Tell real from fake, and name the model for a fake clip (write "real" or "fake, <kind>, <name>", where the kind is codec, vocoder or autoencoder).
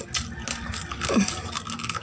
real